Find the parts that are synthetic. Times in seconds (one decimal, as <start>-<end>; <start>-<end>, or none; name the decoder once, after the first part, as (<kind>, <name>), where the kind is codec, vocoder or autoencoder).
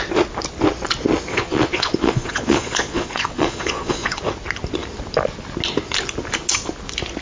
1.3-4.2 (vocoder, Vocos)